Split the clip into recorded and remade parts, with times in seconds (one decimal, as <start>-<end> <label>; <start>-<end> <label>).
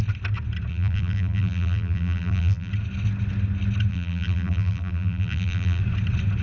0.0-0.7 recorded; 0.7-2.7 remade; 2.7-3.9 recorded; 3.9-5.8 remade; 5.8-6.4 recorded